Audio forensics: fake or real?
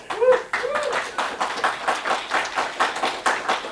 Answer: real